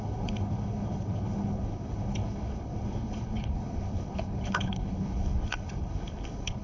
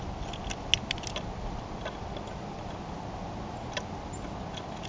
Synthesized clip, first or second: first